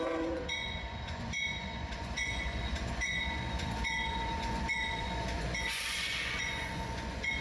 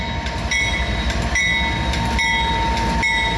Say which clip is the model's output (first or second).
first